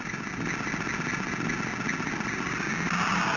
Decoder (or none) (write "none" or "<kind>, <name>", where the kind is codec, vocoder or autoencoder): none